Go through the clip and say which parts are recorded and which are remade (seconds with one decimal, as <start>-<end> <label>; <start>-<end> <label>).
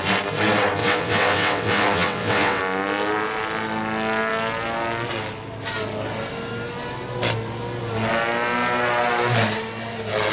0.0-0.8 recorded; 0.8-2.6 remade; 2.6-10.3 recorded